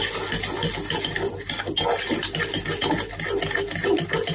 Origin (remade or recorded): recorded